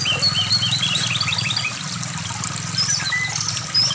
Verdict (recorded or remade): recorded